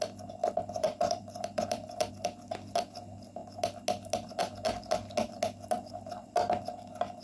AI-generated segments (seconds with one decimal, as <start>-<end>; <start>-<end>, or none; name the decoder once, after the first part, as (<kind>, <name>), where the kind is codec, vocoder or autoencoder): 0.4-2.1 (vocoder, BigVGAN v2)